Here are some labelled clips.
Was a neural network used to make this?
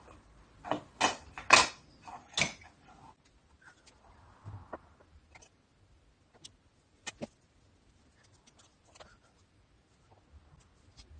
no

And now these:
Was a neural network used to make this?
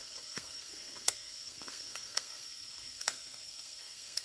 yes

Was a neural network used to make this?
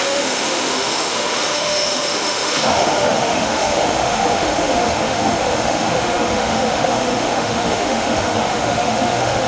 yes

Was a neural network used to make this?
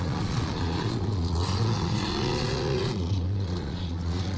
yes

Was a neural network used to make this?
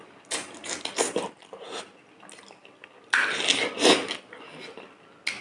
no